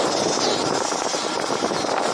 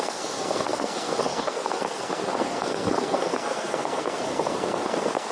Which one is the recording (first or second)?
first